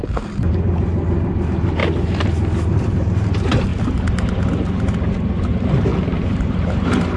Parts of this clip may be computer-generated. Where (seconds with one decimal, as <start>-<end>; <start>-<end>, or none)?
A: 0.0-0.9; 1.4-1.8; 2.8-3.7; 5.5-7.2